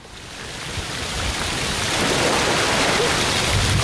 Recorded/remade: recorded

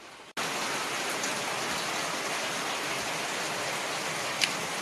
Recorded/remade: recorded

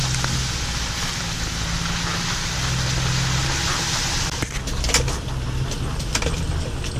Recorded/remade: recorded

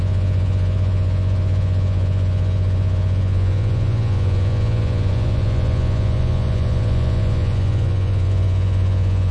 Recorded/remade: remade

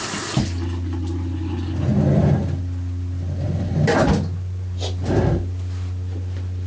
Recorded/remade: recorded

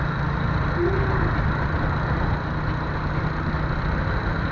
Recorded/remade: recorded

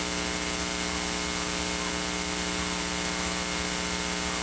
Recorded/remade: recorded